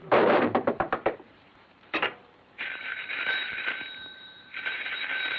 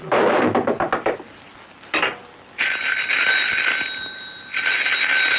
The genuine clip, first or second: second